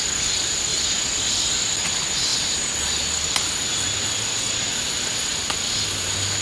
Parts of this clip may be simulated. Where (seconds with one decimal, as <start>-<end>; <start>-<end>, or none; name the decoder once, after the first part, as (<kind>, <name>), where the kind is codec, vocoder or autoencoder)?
none